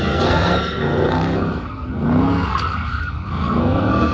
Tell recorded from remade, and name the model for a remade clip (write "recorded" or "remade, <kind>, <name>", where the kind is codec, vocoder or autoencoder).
remade, codec, SNAC